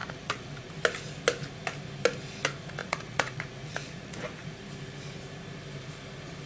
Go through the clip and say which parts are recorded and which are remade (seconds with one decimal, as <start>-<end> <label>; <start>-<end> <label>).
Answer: 0.0-0.7 remade; 0.7-2.8 recorded; 2.8-4.6 remade; 4.6-6.5 recorded